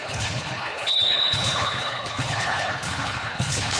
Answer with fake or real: fake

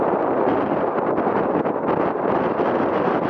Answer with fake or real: real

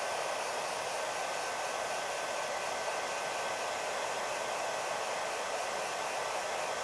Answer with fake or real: real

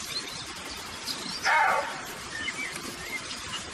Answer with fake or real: fake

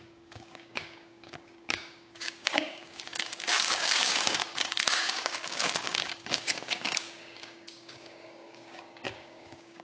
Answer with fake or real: fake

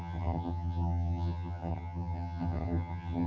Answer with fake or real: fake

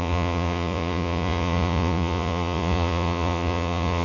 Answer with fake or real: fake